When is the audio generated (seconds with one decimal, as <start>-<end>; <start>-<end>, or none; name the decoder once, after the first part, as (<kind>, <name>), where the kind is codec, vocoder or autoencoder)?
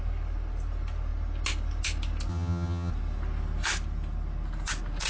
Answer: 2.3-2.9 (vocoder, HiFi-GAN)